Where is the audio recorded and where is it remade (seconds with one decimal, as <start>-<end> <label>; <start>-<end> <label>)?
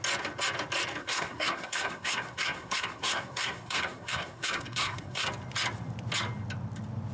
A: 0.0-1.0 recorded; 1.0-5.3 remade; 5.3-7.1 recorded